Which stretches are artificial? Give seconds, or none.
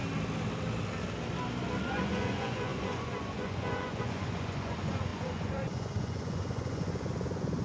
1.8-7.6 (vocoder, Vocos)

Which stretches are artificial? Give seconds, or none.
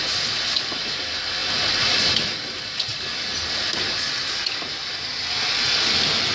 none